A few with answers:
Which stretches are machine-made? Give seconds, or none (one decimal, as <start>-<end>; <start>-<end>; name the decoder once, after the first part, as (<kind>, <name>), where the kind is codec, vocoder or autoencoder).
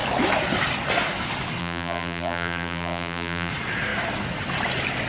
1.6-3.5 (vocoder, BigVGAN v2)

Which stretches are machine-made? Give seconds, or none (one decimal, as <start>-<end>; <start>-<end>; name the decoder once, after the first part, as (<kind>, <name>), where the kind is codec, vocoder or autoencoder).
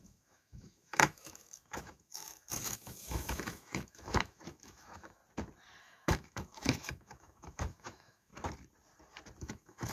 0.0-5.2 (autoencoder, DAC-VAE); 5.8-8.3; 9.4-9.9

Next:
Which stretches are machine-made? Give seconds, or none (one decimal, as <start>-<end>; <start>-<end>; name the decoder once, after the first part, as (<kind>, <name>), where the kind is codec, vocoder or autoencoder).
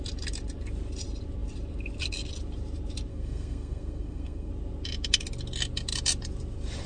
3.1-4.5 (codec, SNAC)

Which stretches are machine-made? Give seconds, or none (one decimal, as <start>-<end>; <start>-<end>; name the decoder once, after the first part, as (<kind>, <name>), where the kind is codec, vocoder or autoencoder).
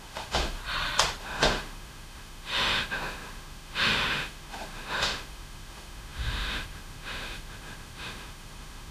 0.0-0.6 (autoencoder, DAC-VAE); 1.2-8.9